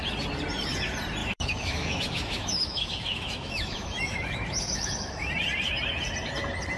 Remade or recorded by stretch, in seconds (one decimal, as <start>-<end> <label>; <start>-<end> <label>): 0.0-1.2 recorded; 1.2-5.3 remade; 5.3-6.8 recorded